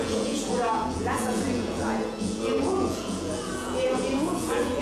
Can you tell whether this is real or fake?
fake